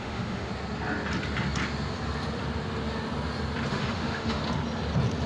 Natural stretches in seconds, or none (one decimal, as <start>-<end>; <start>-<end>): 0.5-3.7; 4.4-5.3